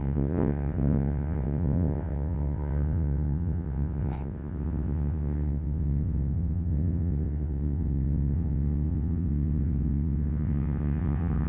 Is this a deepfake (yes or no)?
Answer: yes